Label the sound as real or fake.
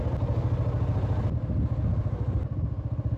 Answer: real